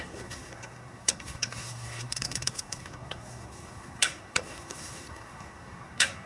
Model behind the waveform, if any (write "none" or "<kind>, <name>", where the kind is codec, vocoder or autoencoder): codec, SNAC